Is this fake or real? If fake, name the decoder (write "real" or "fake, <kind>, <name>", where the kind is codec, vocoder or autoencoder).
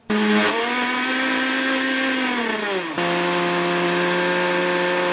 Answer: real